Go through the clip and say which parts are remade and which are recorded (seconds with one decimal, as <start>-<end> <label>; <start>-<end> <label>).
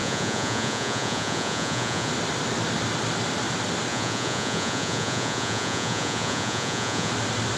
0.0-2.1 remade; 2.1-3.9 recorded; 3.9-7.1 remade; 7.1-7.6 recorded